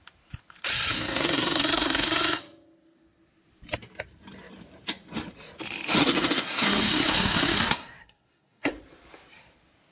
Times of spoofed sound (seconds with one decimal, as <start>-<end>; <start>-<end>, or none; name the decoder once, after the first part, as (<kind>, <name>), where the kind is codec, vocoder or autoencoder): 0.7-2.4 (codec, SNAC); 6.0-8.7